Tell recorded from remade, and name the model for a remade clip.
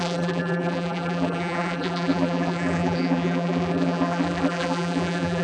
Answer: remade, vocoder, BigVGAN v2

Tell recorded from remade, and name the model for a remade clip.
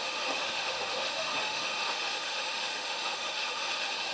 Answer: remade, autoencoder, DAC-VAE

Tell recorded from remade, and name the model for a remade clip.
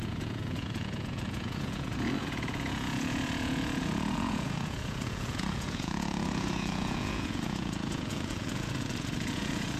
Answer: remade, vocoder, Vocos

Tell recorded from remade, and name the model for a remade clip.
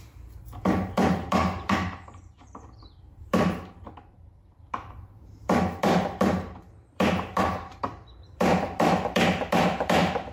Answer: remade, vocoder, BigVGAN v2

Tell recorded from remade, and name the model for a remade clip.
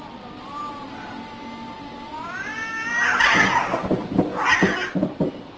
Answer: recorded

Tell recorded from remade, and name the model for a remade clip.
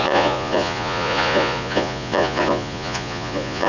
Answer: remade, vocoder, Vocos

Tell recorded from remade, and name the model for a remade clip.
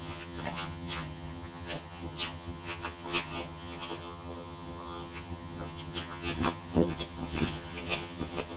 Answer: remade, vocoder, HiFi-GAN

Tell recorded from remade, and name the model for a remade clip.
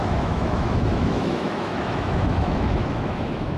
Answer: remade, autoencoder, DAC-VAE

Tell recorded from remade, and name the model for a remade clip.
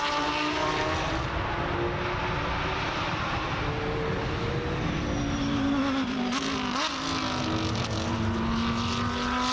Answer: recorded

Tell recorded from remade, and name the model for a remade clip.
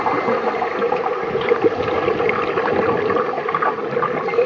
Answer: recorded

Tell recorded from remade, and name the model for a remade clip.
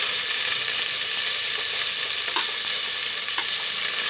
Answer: recorded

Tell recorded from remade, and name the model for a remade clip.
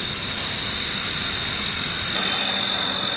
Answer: recorded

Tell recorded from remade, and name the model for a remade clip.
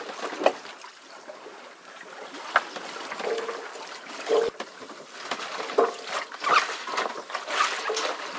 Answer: recorded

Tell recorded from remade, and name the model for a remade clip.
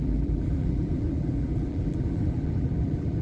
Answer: remade, vocoder, BigVGAN v2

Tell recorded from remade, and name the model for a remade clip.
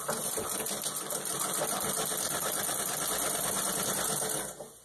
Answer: recorded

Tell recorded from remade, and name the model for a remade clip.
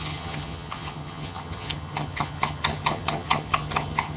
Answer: remade, vocoder, HiFi-GAN